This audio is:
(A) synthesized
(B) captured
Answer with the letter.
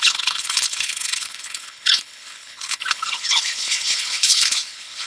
A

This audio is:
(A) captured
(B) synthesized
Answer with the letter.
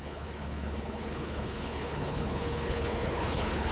B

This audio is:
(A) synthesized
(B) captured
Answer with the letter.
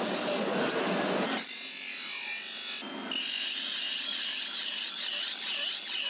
B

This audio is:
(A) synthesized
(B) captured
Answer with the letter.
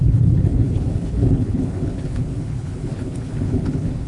A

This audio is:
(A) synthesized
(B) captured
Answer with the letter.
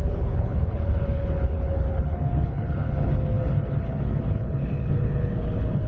A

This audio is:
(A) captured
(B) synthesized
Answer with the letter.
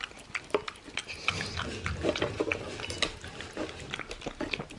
A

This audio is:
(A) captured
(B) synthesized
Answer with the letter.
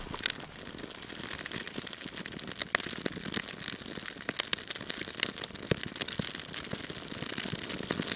A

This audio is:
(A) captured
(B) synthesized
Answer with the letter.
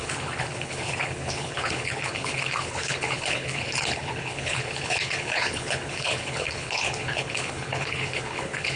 B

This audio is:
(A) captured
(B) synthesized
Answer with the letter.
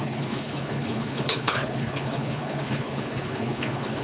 B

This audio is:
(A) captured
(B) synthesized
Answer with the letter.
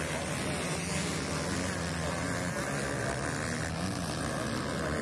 A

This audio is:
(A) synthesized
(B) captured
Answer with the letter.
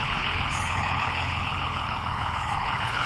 A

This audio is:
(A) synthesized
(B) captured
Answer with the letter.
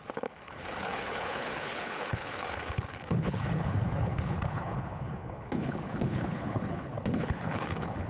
A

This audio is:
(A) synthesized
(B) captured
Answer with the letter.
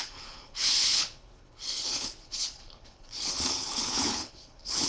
A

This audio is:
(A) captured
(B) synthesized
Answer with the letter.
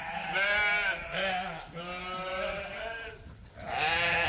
A